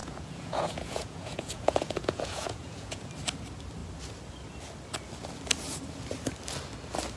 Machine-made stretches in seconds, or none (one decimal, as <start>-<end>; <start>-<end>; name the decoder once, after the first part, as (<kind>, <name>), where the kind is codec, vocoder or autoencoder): 0.0-3.1 (vocoder, Vocos)